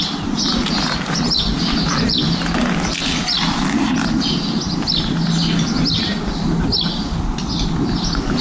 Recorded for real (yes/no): yes